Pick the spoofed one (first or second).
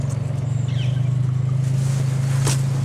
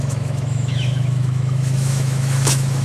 second